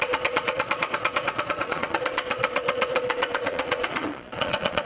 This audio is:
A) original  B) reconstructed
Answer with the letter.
B